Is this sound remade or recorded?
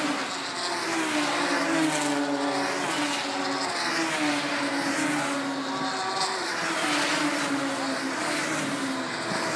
recorded